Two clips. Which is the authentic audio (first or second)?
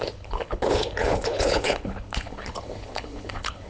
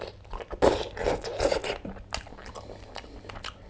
second